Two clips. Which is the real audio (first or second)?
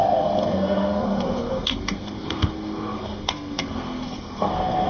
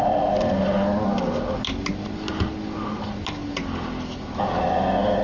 second